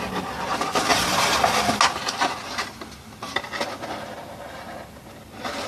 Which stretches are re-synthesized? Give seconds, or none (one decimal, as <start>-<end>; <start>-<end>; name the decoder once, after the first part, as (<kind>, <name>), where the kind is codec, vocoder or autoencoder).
0.9-1.8 (vocoder, BigVGAN v2)